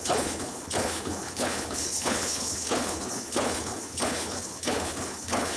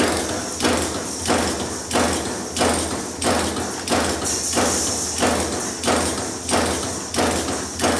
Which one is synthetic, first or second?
first